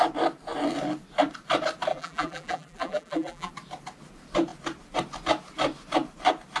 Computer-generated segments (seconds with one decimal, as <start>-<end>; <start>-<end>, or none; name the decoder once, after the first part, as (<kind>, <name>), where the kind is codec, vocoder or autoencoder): 1.9-3.5 (vocoder, BigVGAN v2)